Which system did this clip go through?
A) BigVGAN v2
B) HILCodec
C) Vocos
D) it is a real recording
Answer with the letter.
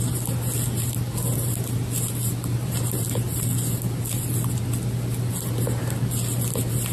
D